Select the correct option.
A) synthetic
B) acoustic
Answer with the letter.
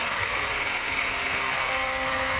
A